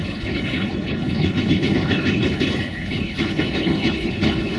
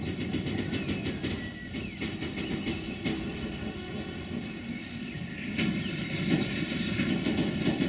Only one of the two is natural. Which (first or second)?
second